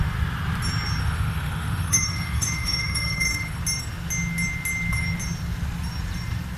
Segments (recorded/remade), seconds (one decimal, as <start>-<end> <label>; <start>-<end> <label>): 0.0-1.0 recorded; 1.0-3.6 remade; 3.6-6.6 recorded